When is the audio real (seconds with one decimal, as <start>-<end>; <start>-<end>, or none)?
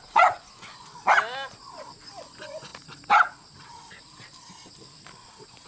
0.9-2.2; 2.7-5.7